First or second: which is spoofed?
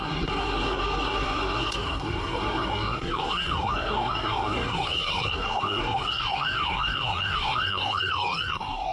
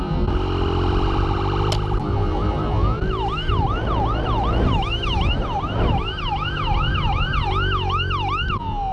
first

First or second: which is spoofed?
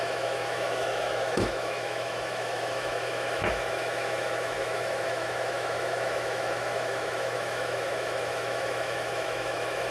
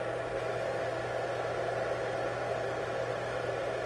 first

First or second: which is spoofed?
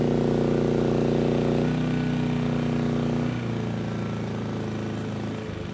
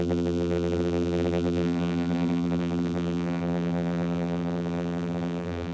second